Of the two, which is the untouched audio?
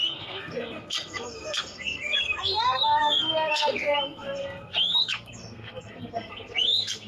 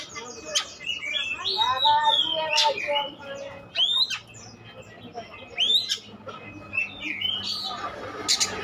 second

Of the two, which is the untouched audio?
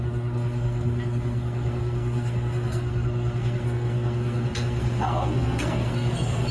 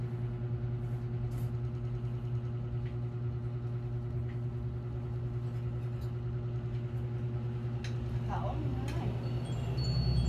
second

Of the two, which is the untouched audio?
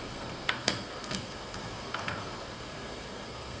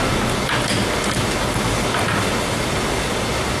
second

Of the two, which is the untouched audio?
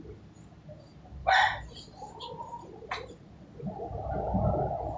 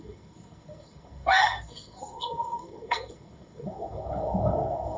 first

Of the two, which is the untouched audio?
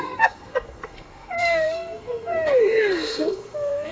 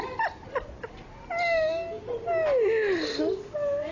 second